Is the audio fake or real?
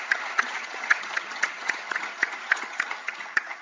fake